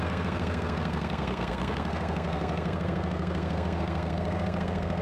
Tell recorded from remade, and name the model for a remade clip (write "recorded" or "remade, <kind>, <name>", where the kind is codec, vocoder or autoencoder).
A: remade, codec, SNAC